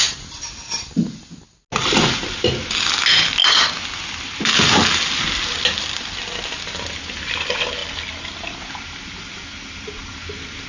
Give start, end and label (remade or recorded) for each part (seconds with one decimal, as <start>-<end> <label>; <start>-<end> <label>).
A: 0.0-10.7 recorded

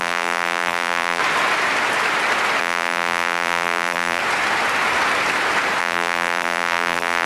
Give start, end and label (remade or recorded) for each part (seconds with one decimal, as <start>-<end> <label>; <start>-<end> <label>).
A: 0.0-1.2 remade; 1.2-2.6 recorded; 2.6-4.2 remade; 4.2-5.8 recorded; 5.8-7.3 remade

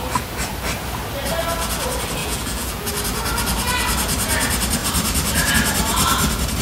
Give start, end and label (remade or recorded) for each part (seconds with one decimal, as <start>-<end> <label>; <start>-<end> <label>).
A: 0.0-2.2 recorded; 2.2-2.9 remade; 2.9-6.6 recorded

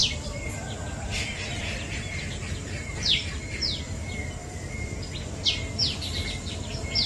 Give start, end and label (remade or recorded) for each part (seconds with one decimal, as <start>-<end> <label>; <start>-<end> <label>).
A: 0.0-7.1 remade

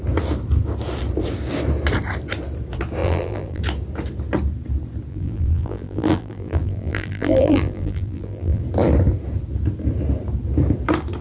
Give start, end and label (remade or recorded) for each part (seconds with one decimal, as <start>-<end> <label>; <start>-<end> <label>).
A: 0.0-3.0 recorded; 3.0-3.6 remade; 3.6-5.1 recorded; 5.1-8.6 remade; 8.6-11.2 recorded